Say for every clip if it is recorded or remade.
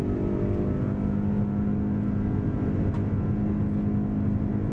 recorded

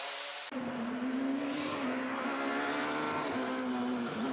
recorded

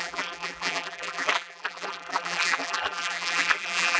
remade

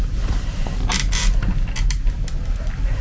recorded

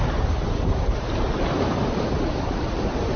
remade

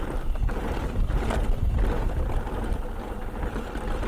recorded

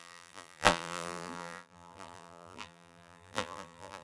remade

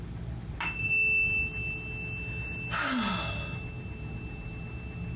recorded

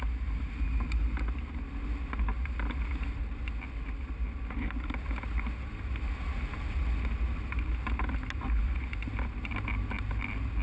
recorded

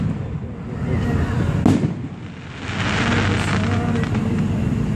recorded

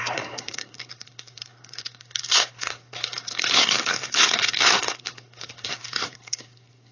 remade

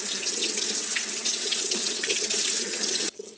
remade